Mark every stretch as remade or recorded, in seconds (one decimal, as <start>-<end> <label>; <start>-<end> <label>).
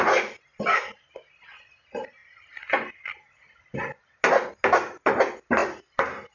0.0-5.6 recorded; 5.6-6.3 remade